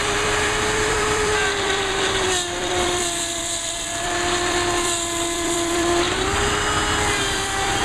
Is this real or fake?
fake